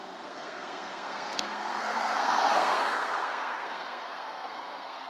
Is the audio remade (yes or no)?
yes